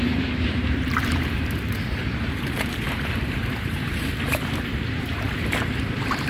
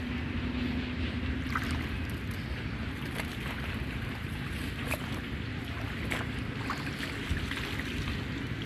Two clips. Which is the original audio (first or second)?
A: second